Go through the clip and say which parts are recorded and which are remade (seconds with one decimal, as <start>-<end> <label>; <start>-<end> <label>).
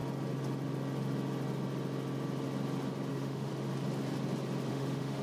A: 0.0-3.1 recorded; 3.1-3.5 remade; 3.5-4.7 recorded; 4.7-5.2 remade